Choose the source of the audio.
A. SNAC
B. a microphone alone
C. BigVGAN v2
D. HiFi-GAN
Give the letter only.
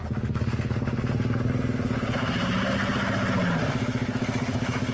B